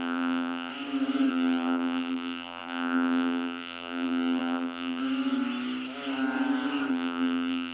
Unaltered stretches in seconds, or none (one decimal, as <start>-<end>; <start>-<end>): 0.7-1.3; 5.0-6.9

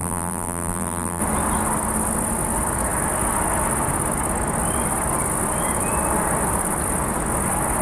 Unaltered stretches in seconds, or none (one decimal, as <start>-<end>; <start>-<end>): 1.2-7.8

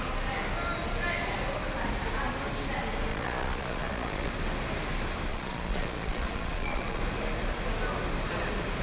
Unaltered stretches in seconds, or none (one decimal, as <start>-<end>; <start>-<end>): 0.0-3.1; 4.3-5.3; 7.0-8.8

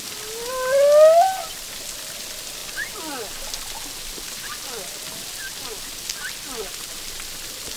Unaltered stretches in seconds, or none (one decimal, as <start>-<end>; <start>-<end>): 0.0-7.8

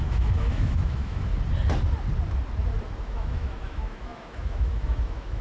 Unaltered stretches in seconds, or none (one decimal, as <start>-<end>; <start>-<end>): 1.3-3.0